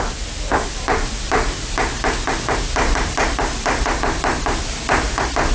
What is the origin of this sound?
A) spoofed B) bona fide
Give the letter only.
B